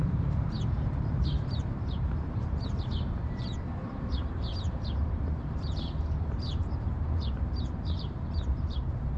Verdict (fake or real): fake